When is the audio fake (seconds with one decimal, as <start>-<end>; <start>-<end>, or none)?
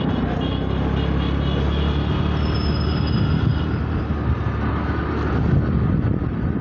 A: none